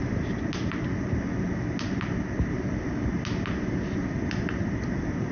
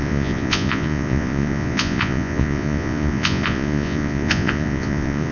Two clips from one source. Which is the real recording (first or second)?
first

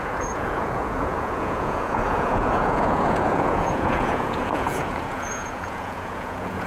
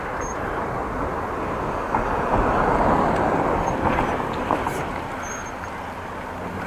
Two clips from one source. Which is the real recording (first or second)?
second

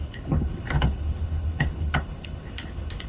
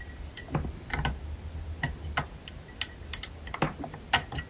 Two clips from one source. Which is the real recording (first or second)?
second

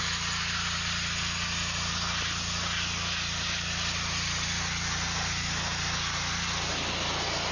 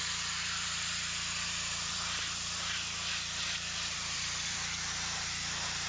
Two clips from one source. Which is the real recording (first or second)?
first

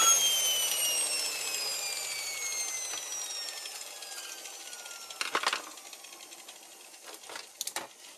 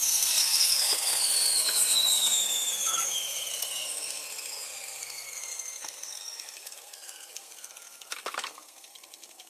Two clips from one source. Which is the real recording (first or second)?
first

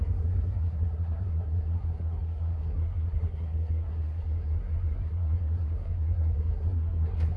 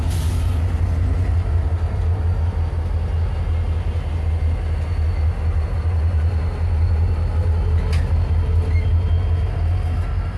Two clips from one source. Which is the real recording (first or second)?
second